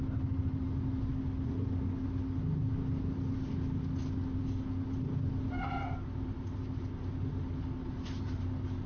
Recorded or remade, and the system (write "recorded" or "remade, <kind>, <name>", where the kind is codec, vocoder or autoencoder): recorded